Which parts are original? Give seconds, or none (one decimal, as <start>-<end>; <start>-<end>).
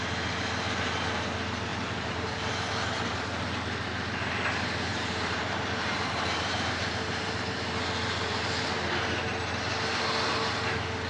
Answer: 0.0-1.7; 3.5-4.9; 7.3-11.1